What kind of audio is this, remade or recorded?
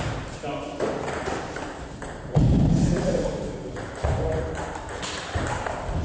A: recorded